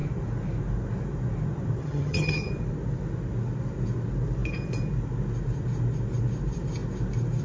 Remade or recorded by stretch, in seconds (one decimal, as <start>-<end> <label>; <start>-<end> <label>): 0.0-1.8 recorded; 1.8-2.5 remade; 2.5-7.4 recorded